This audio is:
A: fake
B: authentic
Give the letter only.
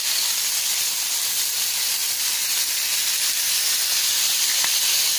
B